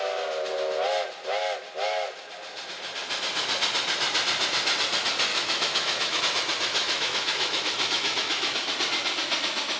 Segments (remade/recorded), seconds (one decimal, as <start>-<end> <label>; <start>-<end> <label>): 0.0-5.3 recorded; 5.3-6.2 remade; 6.2-6.8 recorded; 6.8-8.7 remade; 8.7-9.8 recorded